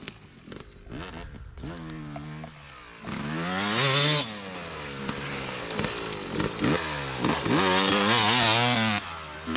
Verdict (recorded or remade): recorded